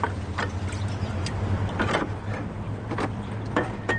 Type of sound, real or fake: fake